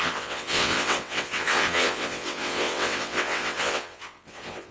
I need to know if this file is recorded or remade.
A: remade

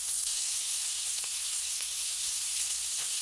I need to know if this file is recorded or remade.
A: remade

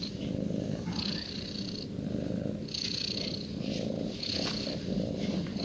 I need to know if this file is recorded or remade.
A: recorded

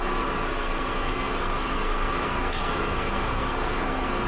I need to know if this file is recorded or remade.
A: remade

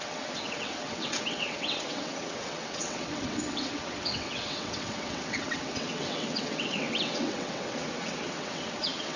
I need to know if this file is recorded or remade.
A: remade